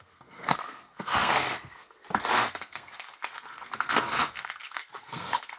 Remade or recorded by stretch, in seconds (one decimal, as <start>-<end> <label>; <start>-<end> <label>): 0.0-5.6 remade